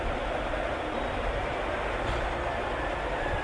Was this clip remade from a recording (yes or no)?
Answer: no